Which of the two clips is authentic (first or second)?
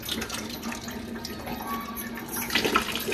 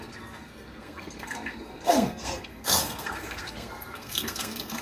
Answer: first